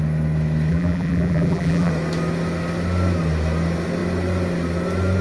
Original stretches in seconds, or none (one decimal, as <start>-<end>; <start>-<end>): 0.0-0.7; 1.9-5.2

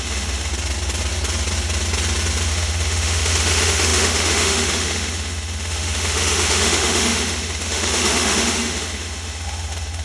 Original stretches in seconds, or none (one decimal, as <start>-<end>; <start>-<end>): 0.5-2.5

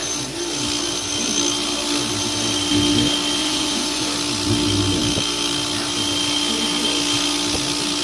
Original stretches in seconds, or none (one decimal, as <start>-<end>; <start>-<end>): 0.0-3.4; 4.1-8.0